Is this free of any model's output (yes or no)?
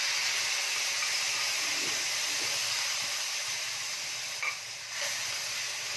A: yes